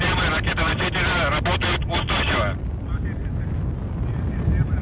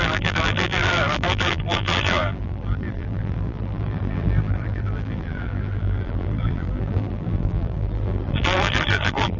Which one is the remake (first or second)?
second